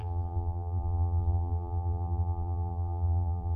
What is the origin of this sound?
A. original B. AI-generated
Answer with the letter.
B